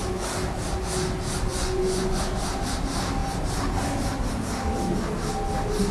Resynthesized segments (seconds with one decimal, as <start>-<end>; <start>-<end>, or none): 1.5-2.2